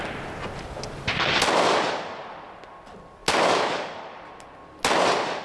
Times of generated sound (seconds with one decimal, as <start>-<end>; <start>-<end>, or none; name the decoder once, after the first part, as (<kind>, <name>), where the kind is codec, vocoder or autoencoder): none